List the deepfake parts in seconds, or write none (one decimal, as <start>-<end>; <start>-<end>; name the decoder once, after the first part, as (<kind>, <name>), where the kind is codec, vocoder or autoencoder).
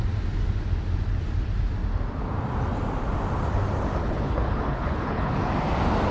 4.0-5.4 (codec, HILCodec)